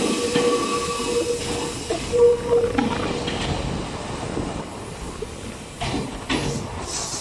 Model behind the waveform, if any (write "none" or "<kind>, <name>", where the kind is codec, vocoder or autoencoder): none